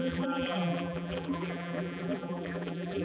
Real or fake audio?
fake